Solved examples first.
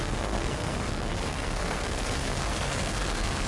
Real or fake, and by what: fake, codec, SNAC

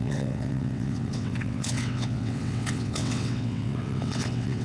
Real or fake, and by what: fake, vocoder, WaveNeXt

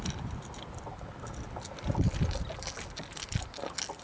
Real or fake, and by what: real